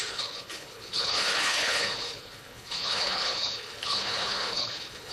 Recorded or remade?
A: remade